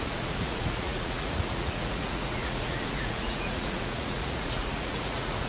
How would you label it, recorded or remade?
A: remade